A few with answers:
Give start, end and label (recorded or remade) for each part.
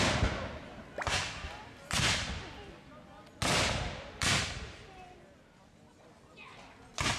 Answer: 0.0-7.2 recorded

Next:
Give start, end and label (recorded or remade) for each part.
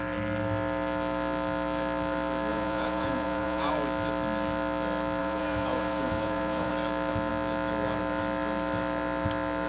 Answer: 0.0-2.5 recorded; 2.5-3.7 remade; 3.7-5.2 recorded; 5.2-6.7 remade; 6.7-9.7 recorded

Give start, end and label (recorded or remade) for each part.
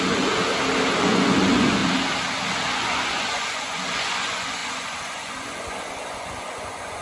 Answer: 0.0-0.5 remade; 0.5-1.0 recorded; 1.0-1.8 remade; 1.8-2.5 recorded; 2.5-7.0 remade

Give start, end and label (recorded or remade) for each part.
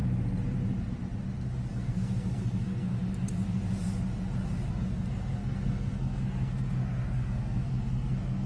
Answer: 0.0-1.7 recorded; 1.7-2.9 remade; 2.9-4.7 recorded; 4.7-8.5 remade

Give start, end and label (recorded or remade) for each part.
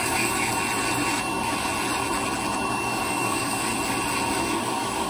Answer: 0.0-0.5 remade; 0.5-2.7 recorded; 2.7-3.7 remade; 3.7-4.4 recorded; 4.4-5.1 remade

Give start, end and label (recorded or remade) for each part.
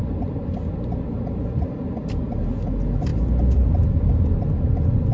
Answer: 0.0-5.1 recorded